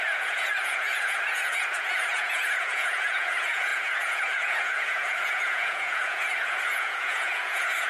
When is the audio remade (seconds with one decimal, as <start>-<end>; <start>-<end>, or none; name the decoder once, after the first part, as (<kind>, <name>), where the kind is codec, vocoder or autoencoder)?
0.0-7.9 (vocoder, Vocos)